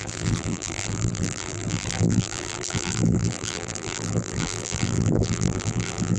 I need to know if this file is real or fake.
fake